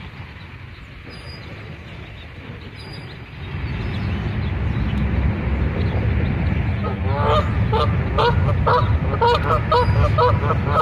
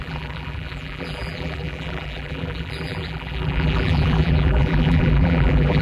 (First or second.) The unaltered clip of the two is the first